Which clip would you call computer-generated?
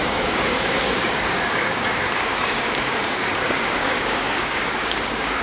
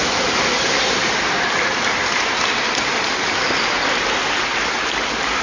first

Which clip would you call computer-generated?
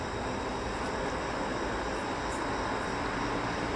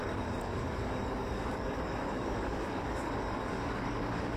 second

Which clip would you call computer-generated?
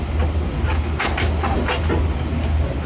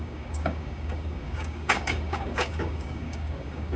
second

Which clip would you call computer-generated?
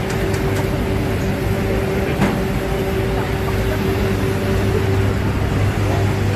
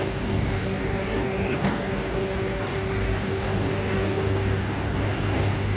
second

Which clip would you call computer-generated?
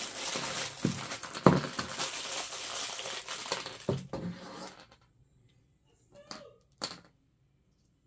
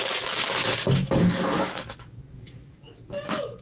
second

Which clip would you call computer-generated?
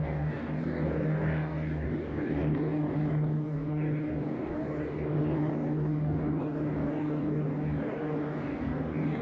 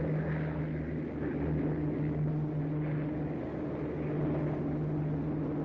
first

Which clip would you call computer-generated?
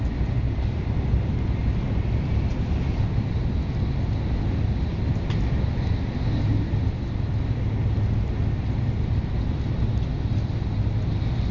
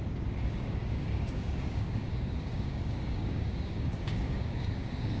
second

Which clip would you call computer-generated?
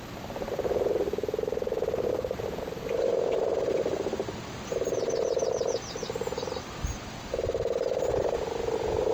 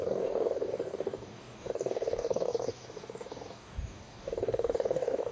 second